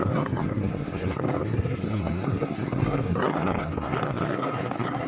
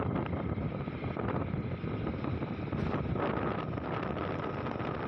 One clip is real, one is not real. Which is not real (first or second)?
first